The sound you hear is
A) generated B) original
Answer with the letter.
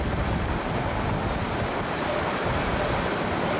B